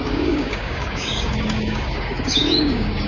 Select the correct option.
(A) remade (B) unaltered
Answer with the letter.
A